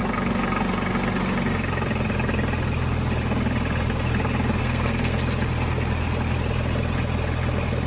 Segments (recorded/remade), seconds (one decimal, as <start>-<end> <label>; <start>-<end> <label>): 0.0-4.6 recorded; 4.6-5.2 remade; 5.2-7.9 recorded